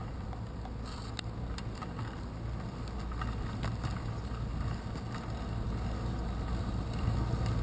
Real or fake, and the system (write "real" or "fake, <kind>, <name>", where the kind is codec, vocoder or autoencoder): real